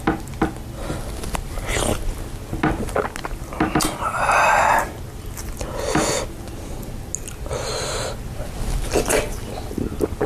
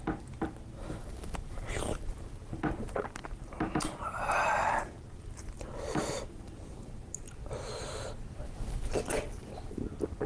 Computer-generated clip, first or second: second